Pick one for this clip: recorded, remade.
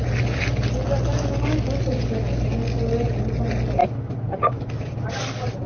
recorded